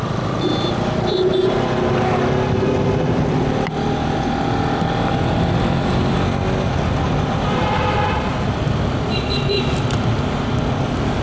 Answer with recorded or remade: recorded